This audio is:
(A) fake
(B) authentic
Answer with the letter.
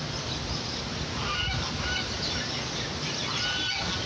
B